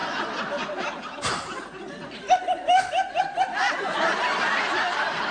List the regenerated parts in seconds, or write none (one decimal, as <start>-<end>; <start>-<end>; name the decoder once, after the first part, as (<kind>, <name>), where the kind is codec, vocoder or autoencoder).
none

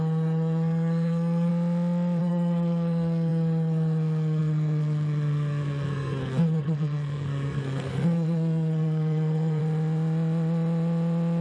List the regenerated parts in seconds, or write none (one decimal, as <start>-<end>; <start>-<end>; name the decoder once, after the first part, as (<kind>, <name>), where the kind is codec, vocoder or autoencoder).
0.0-1.5 (codec, SNAC); 2.2-9.6

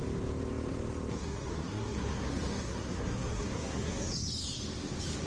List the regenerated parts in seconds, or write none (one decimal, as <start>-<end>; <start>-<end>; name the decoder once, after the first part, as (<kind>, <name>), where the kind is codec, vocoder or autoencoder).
1.1-4.1 (codec, SNAC)

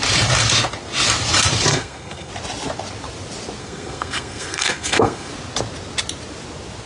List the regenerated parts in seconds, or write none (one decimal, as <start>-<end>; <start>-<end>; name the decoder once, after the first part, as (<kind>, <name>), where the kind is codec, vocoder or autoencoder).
1.7-2.3 (codec, SNAC); 3.6-5.3

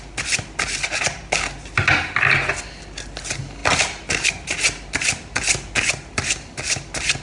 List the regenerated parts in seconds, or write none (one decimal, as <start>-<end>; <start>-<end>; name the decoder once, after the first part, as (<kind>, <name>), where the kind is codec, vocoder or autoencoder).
none